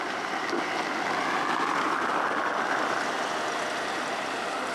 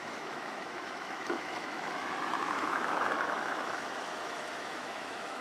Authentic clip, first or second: first